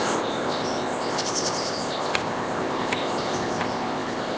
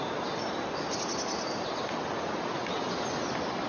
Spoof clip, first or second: first